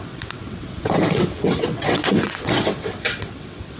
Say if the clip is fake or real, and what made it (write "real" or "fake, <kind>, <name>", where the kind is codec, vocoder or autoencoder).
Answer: fake, vocoder, WaveNeXt